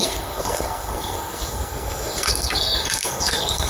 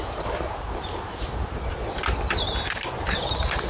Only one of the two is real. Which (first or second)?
second